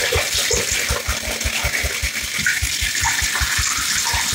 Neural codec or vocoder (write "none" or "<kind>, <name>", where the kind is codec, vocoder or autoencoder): none